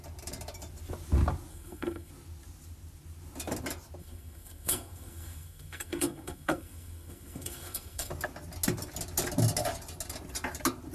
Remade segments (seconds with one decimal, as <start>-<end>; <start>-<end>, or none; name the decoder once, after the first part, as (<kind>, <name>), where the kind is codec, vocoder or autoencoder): 1.5-2.1 (codec, SNAC); 4.0-8.1